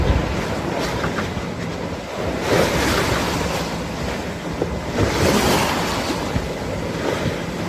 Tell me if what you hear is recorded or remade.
recorded